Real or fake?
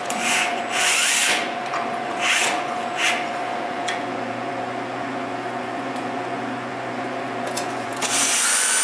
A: fake